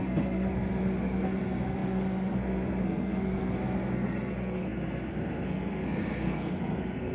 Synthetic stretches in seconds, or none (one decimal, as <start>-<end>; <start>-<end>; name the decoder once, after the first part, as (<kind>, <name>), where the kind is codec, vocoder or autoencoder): 0.0-7.1 (codec, SNAC)